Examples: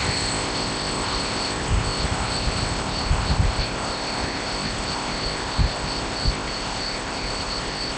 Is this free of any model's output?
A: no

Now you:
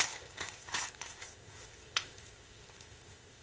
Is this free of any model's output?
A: no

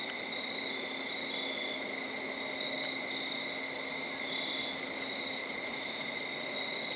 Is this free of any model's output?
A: yes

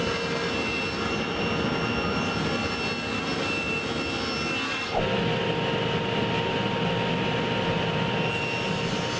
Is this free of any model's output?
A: yes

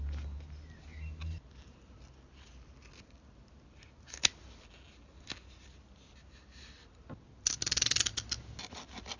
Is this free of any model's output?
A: yes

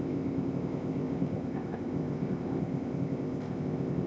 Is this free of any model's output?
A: no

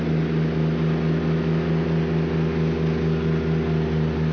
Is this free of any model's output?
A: yes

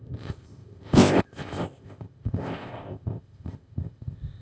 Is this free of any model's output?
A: no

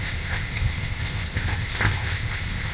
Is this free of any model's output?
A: no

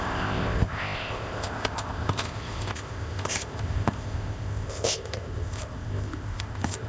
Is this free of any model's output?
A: no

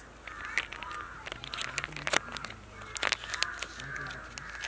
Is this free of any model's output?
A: yes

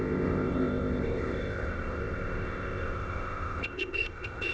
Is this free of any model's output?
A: no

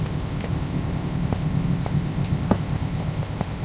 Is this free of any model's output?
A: no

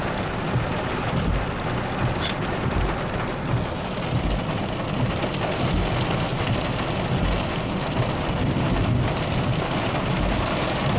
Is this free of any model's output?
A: yes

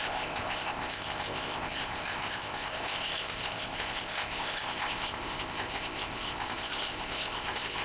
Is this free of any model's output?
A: no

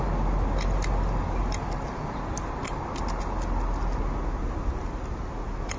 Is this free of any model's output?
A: yes